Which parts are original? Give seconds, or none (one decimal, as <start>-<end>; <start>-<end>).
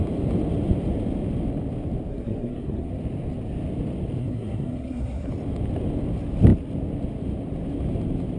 0.0-2.1; 2.9-4.2; 5.3-8.4